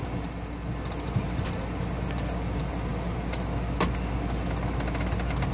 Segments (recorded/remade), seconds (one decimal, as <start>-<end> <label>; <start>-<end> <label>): 0.0-5.5 recorded